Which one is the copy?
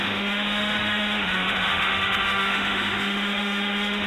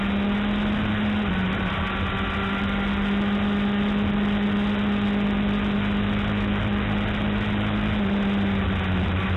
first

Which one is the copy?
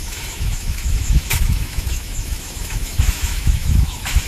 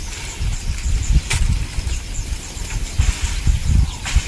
first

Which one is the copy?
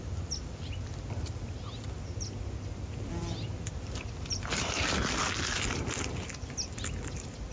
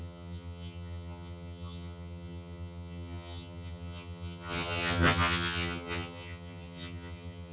second